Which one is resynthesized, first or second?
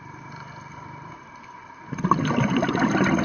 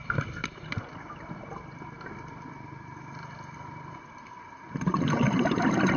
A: second